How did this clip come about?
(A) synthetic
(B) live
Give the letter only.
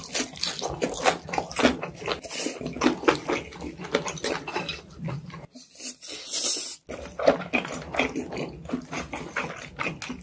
B